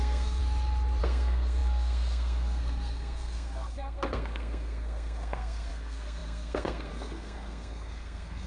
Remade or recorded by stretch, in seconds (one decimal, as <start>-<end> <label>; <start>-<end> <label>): 0.0-0.4 remade; 0.4-1.0 recorded; 1.0-8.5 remade